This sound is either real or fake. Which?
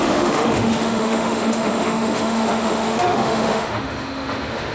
fake